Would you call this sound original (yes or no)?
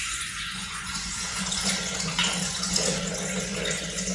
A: no